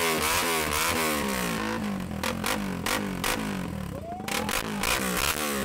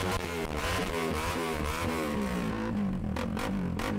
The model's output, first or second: second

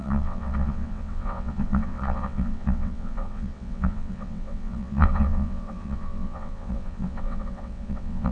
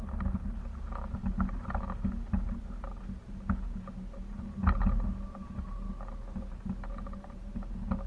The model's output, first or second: first